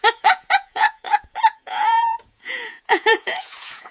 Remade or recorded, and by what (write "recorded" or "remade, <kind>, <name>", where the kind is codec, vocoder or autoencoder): remade, vocoder, Vocos